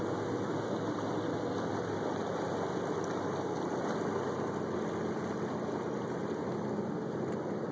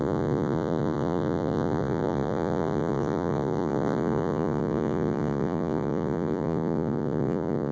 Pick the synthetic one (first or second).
second